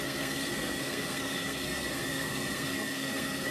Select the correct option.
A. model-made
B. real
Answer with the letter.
A